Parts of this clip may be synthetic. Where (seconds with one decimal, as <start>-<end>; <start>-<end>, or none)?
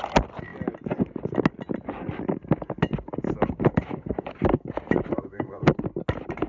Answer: 3.7-5.8